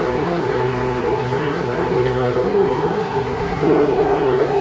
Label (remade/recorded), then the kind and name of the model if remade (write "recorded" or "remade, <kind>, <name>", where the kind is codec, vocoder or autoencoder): remade, codec, SNAC